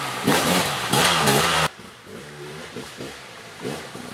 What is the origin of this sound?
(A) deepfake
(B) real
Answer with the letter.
A